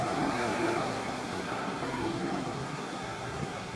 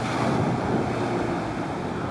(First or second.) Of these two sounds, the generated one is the first